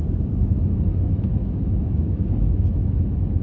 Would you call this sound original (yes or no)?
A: no